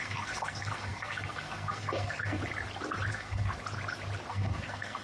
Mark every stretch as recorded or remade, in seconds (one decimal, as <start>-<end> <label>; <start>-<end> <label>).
0.0-2.4 remade; 2.4-3.1 recorded; 3.1-3.5 remade; 3.5-4.3 recorded; 4.3-5.0 remade